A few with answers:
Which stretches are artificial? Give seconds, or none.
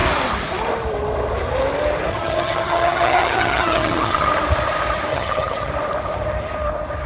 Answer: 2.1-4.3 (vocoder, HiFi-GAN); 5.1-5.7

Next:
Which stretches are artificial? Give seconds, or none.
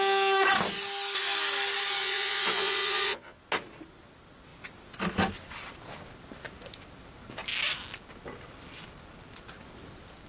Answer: 2.0-3.4 (vocoder, Vocos)